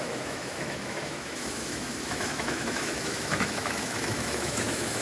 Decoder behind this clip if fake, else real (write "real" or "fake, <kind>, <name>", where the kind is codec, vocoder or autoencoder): fake, autoencoder, DAC-VAE